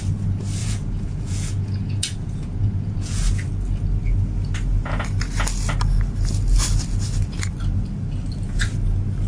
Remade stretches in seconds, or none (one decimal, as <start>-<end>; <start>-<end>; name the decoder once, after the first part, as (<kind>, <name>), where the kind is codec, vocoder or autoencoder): 0.6-3.2 (vocoder, Vocos)